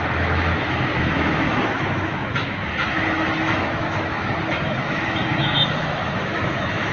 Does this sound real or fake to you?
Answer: fake